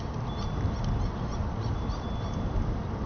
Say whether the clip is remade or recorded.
remade